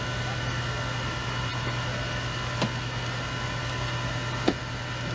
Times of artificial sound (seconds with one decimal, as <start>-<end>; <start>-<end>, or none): none

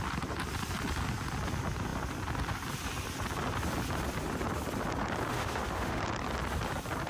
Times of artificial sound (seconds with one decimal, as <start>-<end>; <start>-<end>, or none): 5.3-6.0

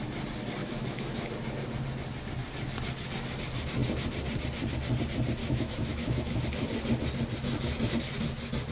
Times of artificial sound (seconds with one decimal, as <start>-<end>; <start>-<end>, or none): 0.6-1.3; 5.4-6.4

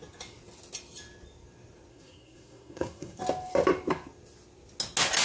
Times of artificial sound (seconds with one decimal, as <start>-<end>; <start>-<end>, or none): 1.9-3.2

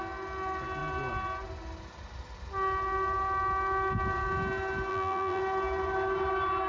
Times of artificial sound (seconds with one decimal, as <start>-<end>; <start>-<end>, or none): 4.9-5.4

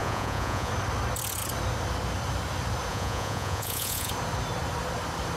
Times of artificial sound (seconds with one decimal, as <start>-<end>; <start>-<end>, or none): 0.0-0.7; 2.9-4.1

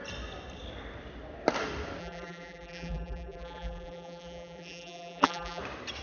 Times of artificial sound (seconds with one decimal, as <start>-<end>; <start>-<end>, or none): 2.0-5.6